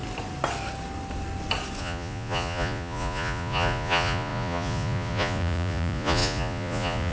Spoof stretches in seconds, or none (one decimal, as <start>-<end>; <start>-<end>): 1.8-7.1